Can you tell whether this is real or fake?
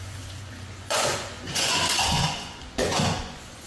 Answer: fake